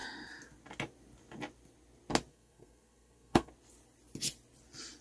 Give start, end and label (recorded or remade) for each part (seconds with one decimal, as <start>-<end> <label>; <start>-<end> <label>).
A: 0.0-2.3 recorded; 2.3-3.5 remade; 3.5-5.0 recorded